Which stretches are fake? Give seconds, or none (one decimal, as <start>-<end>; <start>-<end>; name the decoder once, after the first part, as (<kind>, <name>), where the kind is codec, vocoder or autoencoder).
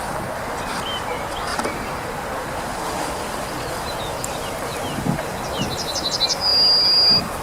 1.5-2.1 (vocoder, BigVGAN v2)